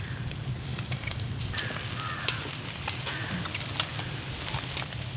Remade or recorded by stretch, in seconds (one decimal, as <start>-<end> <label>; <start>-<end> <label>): 0.0-5.2 recorded